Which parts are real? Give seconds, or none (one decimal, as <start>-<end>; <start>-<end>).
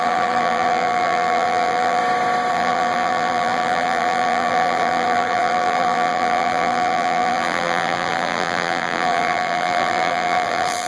2.0-2.5